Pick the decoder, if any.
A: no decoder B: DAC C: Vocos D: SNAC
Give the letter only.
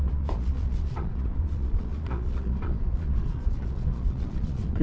C